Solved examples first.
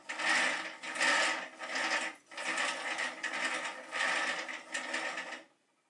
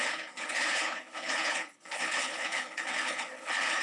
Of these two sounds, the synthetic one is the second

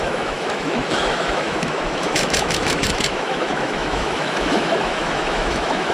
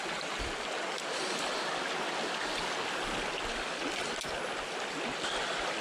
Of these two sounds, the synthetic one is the first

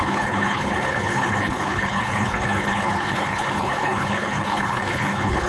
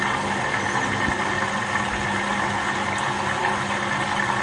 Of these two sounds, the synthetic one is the first